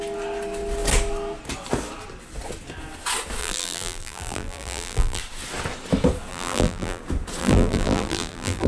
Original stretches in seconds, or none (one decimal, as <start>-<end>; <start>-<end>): 0.0-3.4; 5.2-6.3; 7.0-7.4